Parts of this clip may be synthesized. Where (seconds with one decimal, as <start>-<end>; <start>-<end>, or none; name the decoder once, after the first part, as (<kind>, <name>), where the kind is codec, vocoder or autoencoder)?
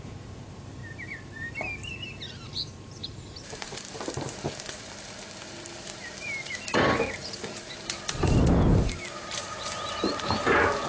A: 0.0-10.9 (vocoder, BigVGAN v2)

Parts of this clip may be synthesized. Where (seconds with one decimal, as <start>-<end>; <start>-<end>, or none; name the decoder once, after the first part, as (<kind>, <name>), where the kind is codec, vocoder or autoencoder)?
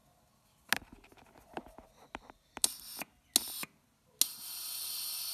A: none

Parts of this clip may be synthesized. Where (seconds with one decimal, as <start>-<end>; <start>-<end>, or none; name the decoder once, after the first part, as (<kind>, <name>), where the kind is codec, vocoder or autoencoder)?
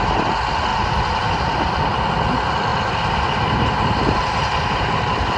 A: 0.7-1.7 (vocoder, BigVGAN v2); 2.7-5.4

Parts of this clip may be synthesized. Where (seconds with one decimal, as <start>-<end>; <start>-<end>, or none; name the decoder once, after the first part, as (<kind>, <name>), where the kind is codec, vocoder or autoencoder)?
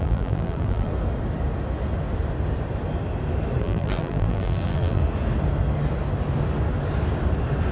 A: 0.0-0.9 (vocoder, BigVGAN v2); 3.6-5.0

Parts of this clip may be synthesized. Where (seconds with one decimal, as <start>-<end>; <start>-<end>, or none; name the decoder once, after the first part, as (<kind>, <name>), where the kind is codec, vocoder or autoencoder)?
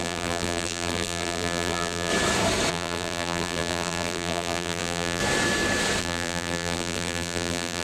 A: 0.0-2.1 (vocoder, BigVGAN v2); 2.7-5.2; 6.0-7.8